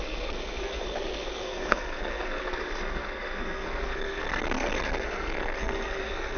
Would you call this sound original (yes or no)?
no